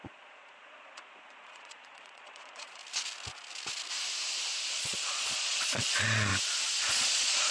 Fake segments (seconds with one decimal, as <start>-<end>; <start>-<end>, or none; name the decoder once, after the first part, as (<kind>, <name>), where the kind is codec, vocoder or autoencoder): 0.0-2.8 (vocoder, Vocos); 4.7-6.3; 6.9-7.5